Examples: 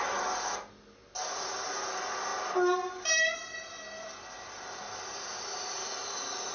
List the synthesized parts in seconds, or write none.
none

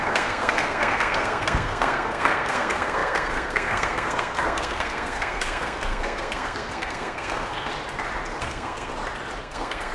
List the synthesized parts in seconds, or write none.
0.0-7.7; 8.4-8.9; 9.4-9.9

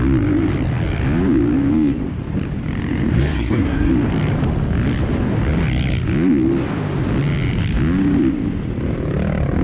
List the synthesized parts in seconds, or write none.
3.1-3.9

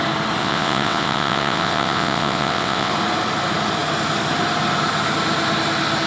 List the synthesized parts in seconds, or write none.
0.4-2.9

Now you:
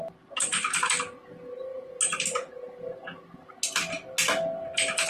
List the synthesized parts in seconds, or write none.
none

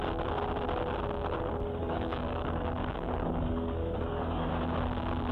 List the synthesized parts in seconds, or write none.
1.8-4.5

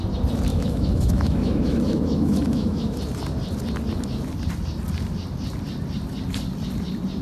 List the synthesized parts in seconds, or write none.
0.5-3.0